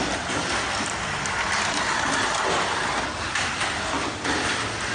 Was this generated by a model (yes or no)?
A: no